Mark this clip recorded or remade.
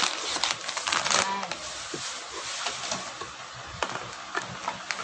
recorded